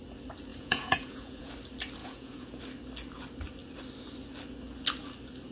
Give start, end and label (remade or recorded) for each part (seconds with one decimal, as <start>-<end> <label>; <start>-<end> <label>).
0.0-0.5 recorded; 0.5-1.5 remade; 1.5-2.0 recorded; 2.0-2.6 remade; 2.6-5.5 recorded